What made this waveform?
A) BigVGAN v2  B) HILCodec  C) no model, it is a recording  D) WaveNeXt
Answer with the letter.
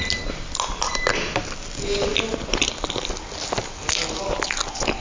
C